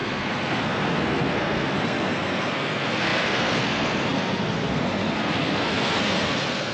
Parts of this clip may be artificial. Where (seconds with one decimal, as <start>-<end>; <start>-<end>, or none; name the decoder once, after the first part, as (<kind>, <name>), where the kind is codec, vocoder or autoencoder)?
0.0-6.7 (codec, SNAC)